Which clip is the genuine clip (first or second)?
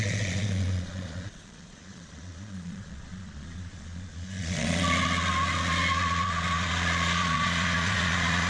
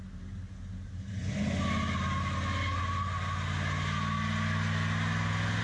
second